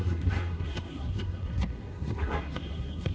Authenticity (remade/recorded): remade